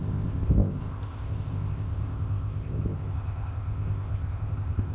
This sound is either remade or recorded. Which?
remade